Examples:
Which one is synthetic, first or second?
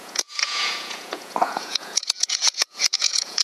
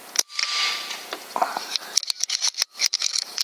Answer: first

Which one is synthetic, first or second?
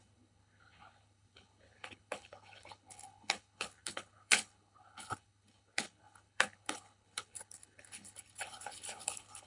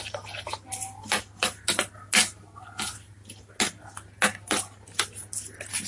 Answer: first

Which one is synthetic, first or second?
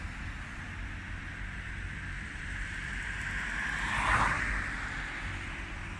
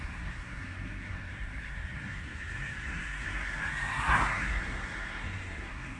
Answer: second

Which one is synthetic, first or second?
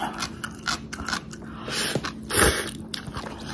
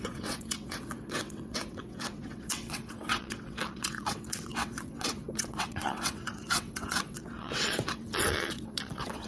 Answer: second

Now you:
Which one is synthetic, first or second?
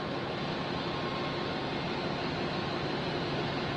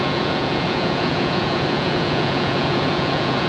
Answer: second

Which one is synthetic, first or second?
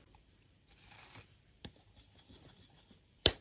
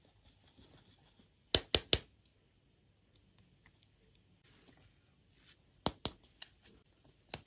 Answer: first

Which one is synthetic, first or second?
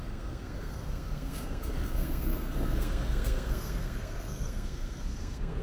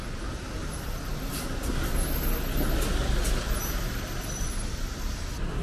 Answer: first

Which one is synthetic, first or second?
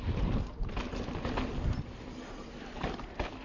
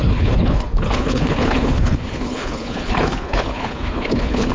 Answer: second